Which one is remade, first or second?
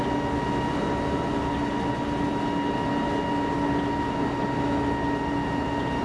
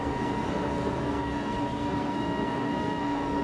second